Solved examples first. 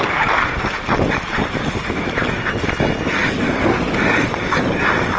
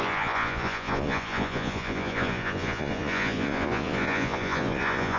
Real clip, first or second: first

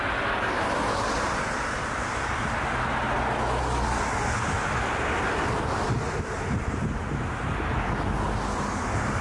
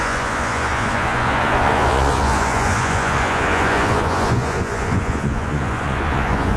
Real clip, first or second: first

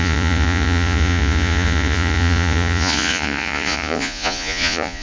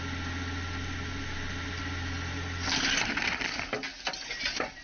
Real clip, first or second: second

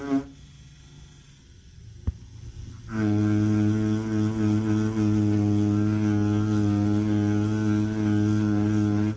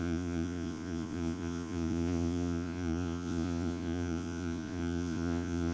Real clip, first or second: first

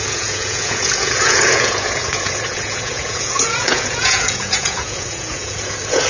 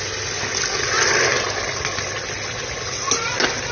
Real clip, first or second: second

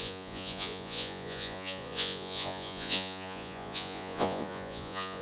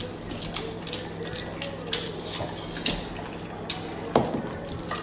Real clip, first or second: second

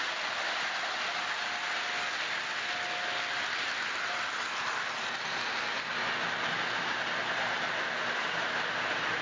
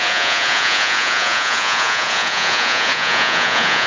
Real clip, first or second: first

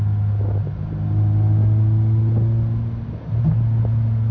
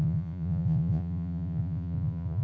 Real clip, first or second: first